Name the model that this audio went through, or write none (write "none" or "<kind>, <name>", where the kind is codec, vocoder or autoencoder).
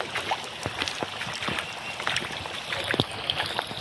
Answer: none